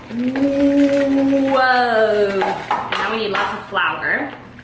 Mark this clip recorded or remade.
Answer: recorded